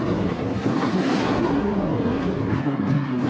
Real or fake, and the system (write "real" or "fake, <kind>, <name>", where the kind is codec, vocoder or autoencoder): fake, codec, SNAC